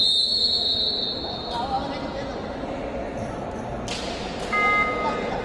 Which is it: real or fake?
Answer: real